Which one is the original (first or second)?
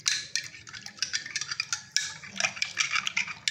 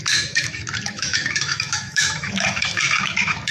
first